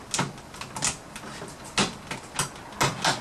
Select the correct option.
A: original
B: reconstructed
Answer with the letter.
A